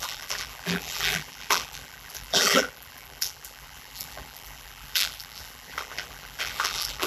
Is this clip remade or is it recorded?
remade